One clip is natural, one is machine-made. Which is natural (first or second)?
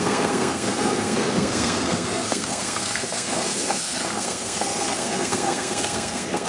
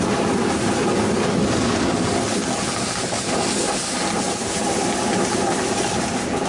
second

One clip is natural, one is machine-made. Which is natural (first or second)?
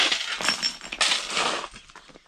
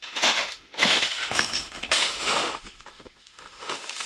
first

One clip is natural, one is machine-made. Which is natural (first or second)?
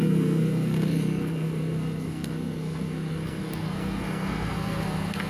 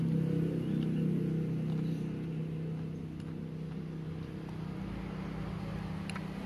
second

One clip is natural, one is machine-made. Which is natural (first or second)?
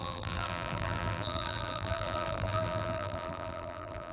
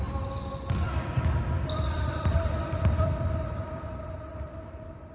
second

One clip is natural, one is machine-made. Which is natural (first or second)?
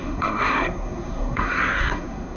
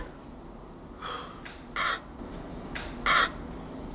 second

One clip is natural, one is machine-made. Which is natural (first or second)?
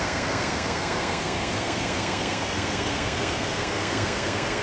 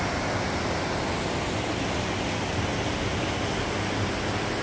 second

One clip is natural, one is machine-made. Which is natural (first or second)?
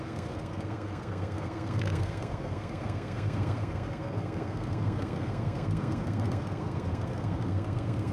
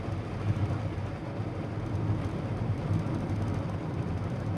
second